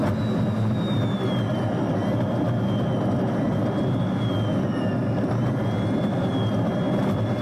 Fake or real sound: real